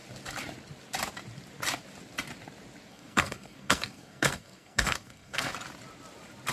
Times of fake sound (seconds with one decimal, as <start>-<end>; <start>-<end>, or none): 2.9-5.5